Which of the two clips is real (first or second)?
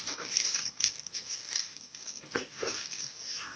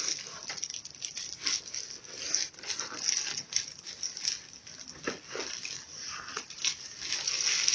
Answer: second